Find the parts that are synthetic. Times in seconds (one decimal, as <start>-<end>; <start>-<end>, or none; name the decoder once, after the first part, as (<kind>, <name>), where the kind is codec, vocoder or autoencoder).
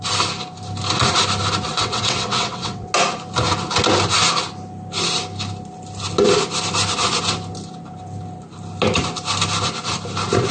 1.7-2.9 (vocoder, WaveNeXt)